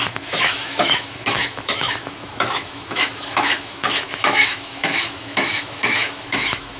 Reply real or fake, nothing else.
fake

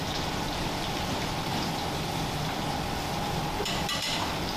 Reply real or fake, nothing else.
fake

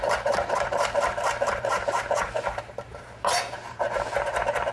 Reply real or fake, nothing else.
fake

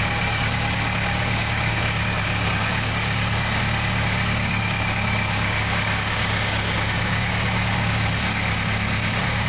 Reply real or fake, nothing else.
fake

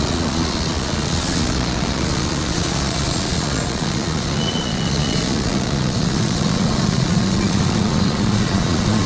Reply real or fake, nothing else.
fake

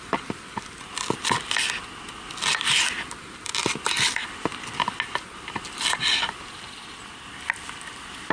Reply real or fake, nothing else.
real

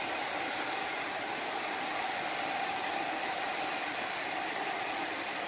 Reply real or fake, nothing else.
real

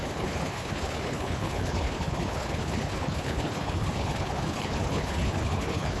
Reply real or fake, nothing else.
fake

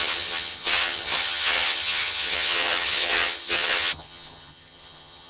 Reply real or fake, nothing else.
fake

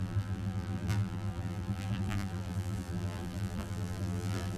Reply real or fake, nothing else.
fake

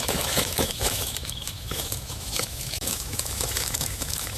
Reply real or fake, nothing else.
fake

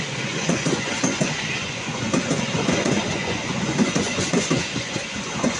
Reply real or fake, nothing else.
fake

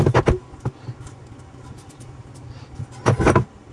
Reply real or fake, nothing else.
real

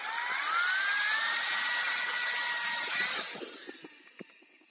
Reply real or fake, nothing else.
real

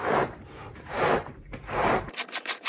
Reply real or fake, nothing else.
fake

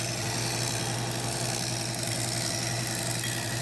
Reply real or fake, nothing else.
real